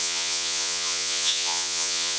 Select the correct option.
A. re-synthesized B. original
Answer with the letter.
A